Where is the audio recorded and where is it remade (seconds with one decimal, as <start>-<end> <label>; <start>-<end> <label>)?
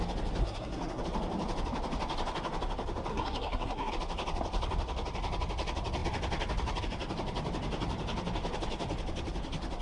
0.0-0.4 recorded; 0.4-1.0 remade; 1.0-3.1 recorded; 3.1-3.9 remade; 3.9-9.8 recorded